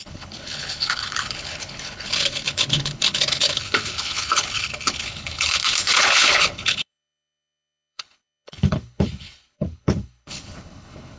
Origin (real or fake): fake